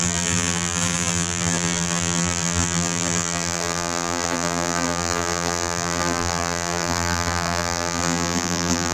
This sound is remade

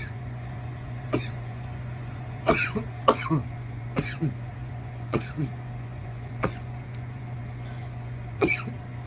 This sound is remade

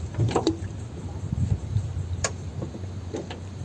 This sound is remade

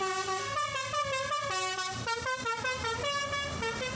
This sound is recorded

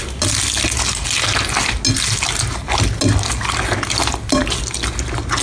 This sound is recorded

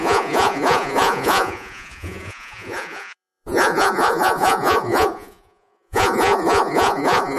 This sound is remade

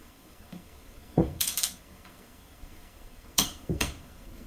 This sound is remade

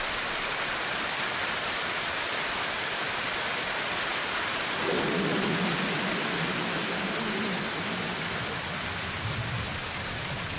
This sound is recorded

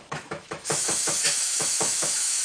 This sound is remade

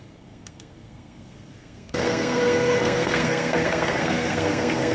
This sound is remade